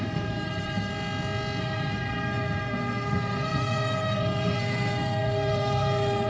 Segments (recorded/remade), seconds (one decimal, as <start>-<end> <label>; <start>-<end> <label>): 0.0-0.9 remade; 0.9-1.6 recorded; 1.6-6.3 remade